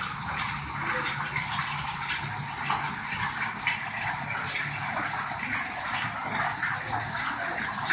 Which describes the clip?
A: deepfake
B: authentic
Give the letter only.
B